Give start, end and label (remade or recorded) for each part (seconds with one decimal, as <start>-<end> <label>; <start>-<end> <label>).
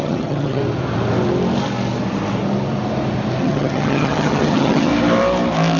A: 0.0-0.6 remade; 0.6-3.4 recorded; 3.4-4.9 remade; 4.9-5.8 recorded